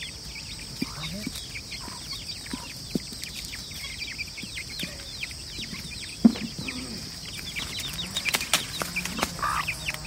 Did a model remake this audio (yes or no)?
no